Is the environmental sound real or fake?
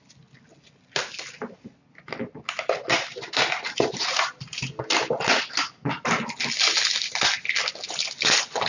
real